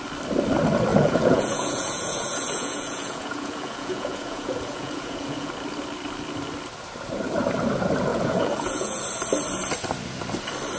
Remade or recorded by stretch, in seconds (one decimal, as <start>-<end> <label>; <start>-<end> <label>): 0.0-0.9 recorded; 0.9-5.5 remade; 5.5-8.1 recorded; 8.1-9.0 remade; 9.0-10.8 recorded